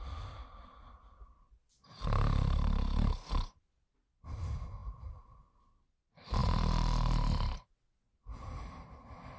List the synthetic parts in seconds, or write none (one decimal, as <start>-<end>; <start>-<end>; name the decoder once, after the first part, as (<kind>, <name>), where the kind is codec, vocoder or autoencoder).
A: none